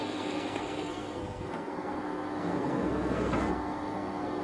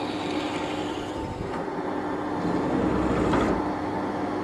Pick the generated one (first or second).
first